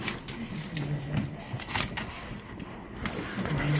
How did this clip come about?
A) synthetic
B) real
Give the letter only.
B